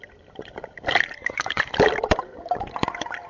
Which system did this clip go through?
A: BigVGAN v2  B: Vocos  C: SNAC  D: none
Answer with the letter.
A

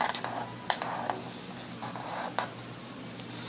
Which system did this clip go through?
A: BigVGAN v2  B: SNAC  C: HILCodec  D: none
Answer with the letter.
D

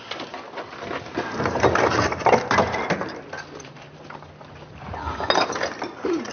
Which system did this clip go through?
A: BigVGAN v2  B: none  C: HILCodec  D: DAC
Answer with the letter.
A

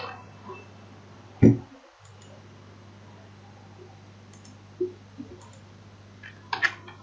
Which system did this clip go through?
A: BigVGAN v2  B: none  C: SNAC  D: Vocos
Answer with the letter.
B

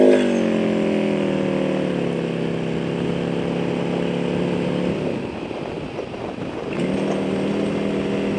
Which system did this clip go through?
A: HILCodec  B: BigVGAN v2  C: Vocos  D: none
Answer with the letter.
D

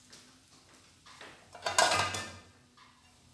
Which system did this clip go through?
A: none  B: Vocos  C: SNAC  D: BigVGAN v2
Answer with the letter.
A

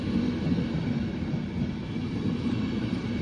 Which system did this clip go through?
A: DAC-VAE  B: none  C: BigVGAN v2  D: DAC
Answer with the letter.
B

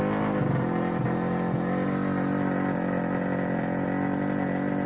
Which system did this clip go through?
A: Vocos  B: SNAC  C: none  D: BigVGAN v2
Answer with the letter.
C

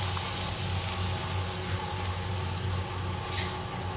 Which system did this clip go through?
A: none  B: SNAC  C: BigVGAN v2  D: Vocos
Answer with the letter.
A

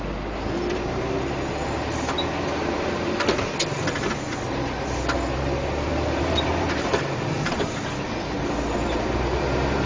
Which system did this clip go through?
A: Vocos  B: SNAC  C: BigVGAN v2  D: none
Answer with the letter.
C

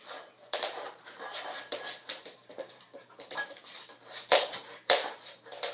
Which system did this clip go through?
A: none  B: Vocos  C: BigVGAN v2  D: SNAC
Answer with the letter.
C